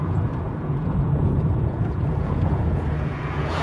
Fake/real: fake